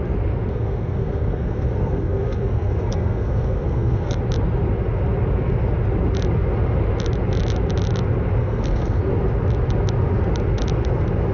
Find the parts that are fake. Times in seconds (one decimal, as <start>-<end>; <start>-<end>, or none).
0.5-4.2; 8.4-9.0

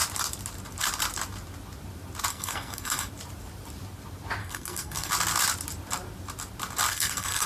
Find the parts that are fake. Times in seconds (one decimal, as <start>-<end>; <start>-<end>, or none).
2.3-3.1; 4.4-5.1; 6.9-7.5

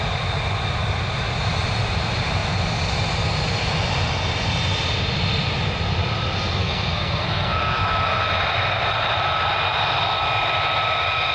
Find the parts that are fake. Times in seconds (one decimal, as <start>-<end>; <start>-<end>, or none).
6.6-8.2

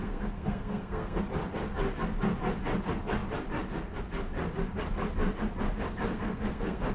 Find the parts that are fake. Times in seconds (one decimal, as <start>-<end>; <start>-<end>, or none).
0.0-1.2; 6.1-6.9

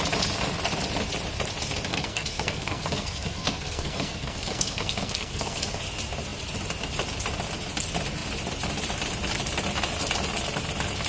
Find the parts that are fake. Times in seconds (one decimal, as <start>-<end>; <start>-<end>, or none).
1.9-5.8

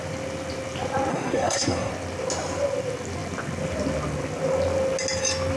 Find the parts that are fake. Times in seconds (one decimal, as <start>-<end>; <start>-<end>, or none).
1.1-1.9

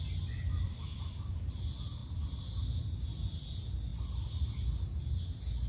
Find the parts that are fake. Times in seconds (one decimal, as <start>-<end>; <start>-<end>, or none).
none